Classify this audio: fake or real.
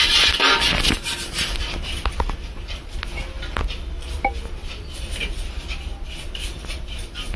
real